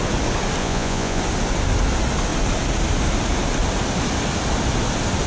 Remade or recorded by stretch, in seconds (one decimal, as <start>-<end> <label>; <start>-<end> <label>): 0.0-0.6 recorded; 0.6-1.2 remade; 1.2-5.3 recorded